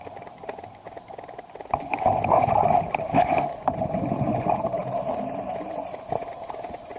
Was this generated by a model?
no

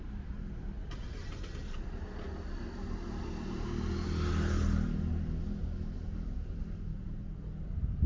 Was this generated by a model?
no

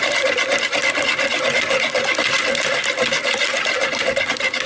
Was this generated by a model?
no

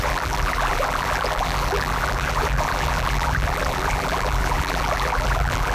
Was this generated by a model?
yes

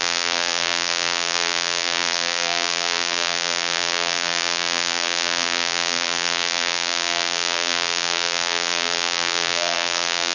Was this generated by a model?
yes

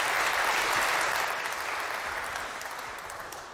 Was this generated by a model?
no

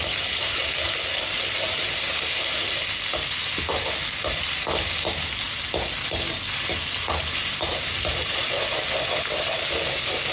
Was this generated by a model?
no